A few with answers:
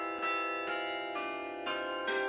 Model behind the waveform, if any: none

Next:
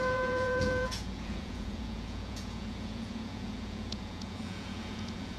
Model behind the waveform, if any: vocoder, Vocos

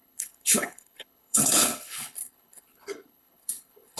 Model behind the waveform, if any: codec, HILCodec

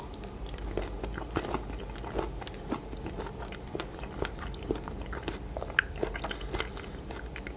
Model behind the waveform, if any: none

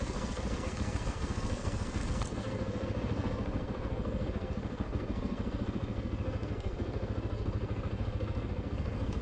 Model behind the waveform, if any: codec, SNAC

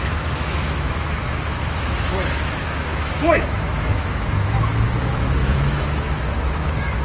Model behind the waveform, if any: autoencoder, DAC-VAE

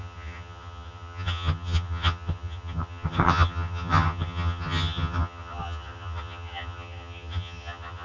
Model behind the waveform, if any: vocoder, HiFi-GAN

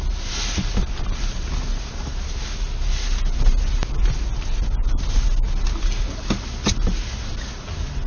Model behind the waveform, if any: none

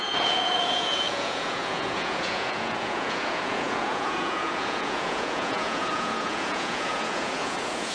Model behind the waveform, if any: vocoder, Vocos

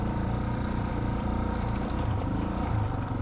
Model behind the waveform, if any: vocoder, BigVGAN v2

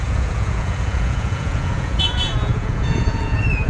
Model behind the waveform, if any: vocoder, Vocos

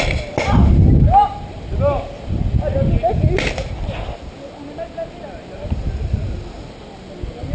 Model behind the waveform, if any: none